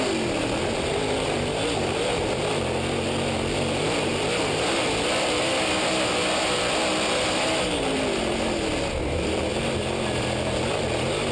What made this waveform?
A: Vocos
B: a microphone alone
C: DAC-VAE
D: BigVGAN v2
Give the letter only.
B